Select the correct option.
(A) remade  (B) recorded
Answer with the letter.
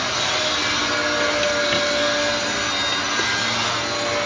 B